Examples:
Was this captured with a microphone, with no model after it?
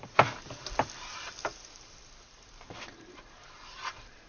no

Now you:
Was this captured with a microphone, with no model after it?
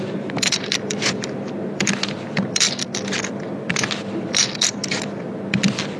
no